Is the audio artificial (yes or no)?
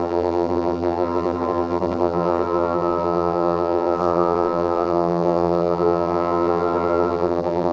yes